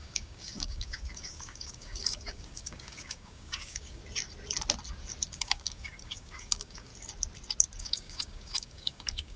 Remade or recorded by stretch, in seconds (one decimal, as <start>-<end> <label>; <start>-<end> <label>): 0.0-4.0 remade; 4.0-5.3 recorded; 5.3-6.9 remade; 6.9-7.8 recorded; 7.8-9.4 remade